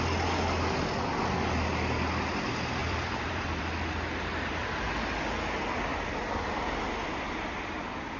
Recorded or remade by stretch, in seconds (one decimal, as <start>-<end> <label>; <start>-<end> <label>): 0.0-2.8 recorded; 2.8-3.6 remade; 3.6-5.9 recorded; 5.9-7.6 remade; 7.6-8.2 recorded